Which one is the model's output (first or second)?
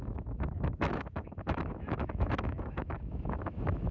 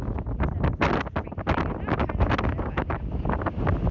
first